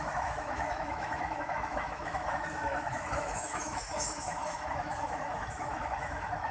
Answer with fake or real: fake